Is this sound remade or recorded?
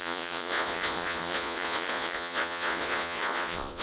remade